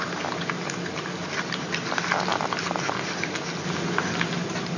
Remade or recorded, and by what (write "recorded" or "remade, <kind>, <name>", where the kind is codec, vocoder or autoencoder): recorded